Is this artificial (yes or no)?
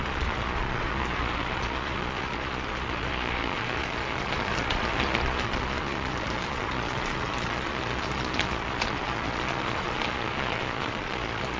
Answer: yes